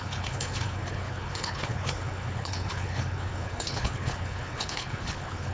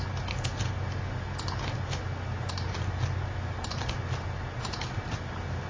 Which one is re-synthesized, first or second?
first